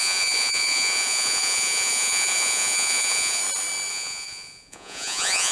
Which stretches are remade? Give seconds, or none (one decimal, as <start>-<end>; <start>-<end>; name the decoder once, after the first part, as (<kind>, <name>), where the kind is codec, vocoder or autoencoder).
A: 0.0-3.4 (vocoder, Vocos); 3.9-5.5